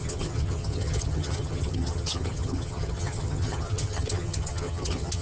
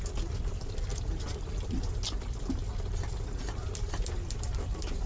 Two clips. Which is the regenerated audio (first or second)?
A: first